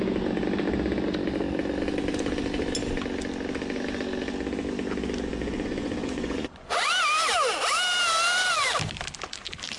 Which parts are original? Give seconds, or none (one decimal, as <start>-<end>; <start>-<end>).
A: 0.0-5.3; 6.9-9.8